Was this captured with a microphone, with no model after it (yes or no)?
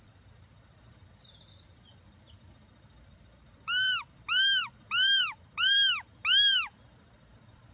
no